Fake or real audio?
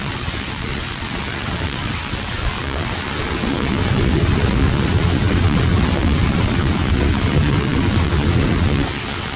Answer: fake